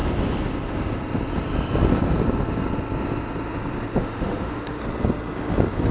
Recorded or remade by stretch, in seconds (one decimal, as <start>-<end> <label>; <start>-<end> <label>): 0.0-4.0 recorded; 4.0-4.8 remade; 4.8-5.9 recorded